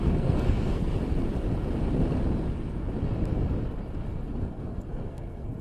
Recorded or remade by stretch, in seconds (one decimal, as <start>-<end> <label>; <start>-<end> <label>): 0.0-1.0 remade; 1.0-4.4 recorded; 4.4-5.6 remade

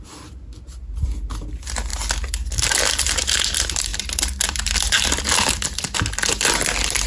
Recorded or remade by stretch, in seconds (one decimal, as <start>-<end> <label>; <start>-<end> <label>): 0.0-7.1 recorded